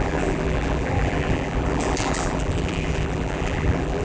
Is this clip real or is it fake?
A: fake